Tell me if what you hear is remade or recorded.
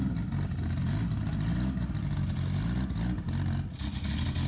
recorded